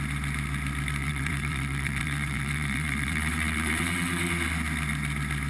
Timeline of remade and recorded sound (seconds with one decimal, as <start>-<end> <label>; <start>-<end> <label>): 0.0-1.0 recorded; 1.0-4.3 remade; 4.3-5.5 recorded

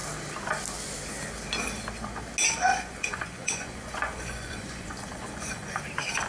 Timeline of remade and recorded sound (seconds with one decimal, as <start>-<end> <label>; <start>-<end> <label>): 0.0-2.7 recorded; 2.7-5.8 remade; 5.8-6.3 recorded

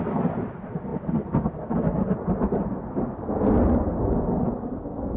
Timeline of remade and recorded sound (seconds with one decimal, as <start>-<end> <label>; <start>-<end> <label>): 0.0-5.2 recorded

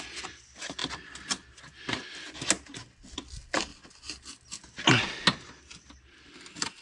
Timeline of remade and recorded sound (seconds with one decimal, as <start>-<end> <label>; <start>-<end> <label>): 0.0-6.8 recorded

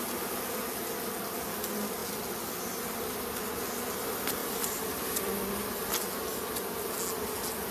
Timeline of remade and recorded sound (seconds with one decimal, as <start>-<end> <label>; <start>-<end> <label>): 0.0-4.4 recorded; 4.4-6.1 remade; 6.1-7.7 recorded

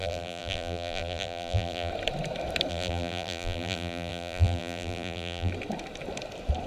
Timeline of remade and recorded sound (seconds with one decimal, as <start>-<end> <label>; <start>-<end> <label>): 0.0-1.9 remade; 1.9-2.7 recorded; 2.7-5.5 remade; 5.5-6.7 recorded

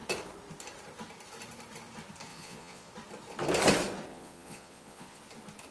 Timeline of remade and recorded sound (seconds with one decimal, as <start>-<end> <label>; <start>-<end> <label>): 0.0-2.3 recorded; 2.3-2.9 remade; 2.9-4.1 recorded; 4.1-5.2 remade; 5.2-5.7 recorded